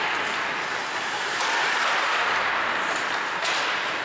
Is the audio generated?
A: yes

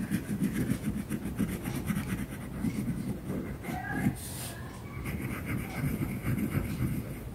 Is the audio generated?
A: no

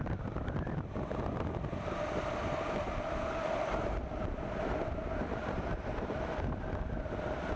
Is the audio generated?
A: yes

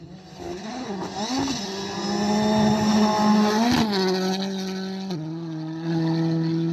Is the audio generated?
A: no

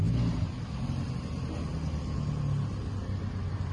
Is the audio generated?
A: no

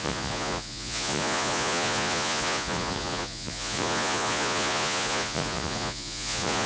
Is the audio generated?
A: yes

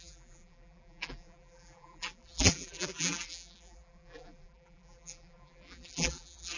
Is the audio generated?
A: yes